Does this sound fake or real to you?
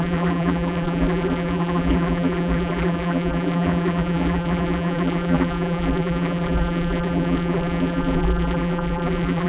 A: fake